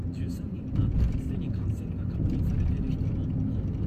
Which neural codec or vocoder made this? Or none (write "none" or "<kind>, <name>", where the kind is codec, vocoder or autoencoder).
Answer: none